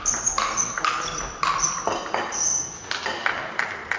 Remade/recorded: recorded